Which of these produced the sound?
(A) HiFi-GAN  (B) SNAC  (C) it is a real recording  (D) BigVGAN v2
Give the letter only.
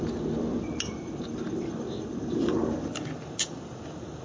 C